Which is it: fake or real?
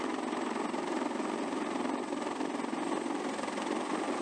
real